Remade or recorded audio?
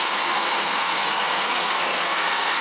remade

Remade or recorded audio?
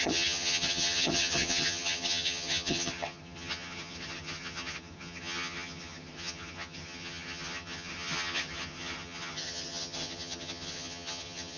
remade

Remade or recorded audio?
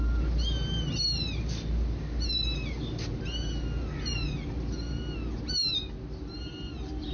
recorded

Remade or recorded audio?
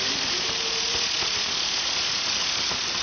recorded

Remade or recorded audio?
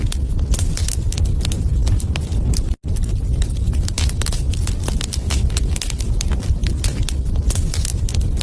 recorded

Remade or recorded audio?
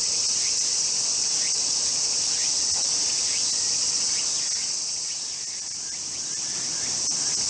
recorded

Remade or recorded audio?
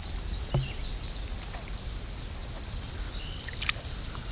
recorded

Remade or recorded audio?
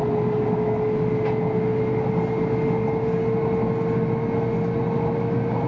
recorded